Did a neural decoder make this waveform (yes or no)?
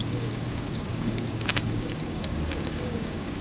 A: yes